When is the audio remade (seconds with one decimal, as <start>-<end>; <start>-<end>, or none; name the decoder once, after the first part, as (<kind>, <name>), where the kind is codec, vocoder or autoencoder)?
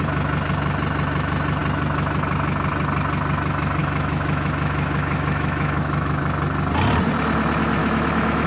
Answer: 3.8-6.2 (autoencoder, DAC-VAE); 7.8-8.5